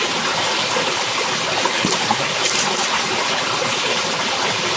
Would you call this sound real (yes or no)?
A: yes